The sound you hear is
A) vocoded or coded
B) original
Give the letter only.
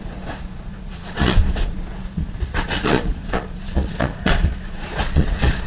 A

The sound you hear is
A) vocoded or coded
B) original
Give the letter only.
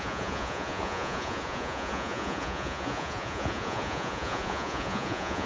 A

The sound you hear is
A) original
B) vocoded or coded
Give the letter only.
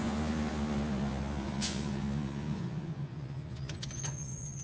B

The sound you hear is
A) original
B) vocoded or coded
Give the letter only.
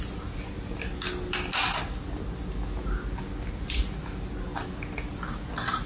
A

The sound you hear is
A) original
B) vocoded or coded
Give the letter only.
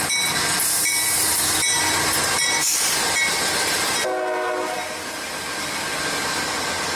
A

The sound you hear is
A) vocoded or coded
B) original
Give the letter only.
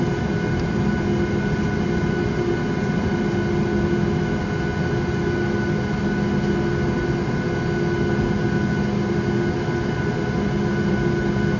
B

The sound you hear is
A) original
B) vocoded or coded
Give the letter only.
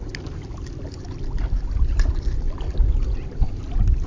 A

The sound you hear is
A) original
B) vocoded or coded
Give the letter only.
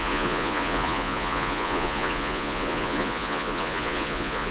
B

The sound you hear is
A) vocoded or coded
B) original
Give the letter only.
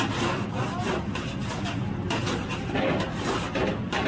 B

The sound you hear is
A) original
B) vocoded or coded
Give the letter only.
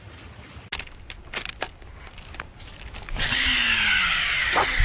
A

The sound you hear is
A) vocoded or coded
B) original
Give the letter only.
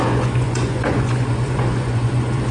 A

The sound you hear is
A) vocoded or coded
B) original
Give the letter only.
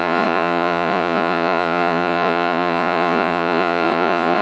A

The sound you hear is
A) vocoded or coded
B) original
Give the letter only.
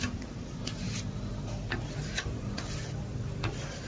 B